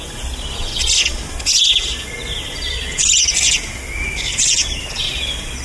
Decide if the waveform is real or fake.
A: real